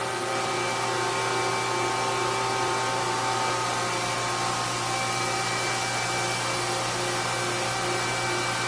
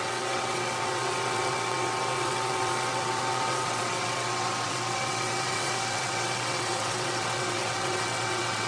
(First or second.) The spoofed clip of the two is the second